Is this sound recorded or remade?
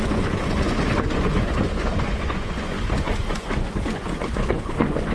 remade